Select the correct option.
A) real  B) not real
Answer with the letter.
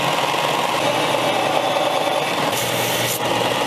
A